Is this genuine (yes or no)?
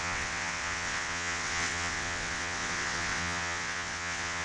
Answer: no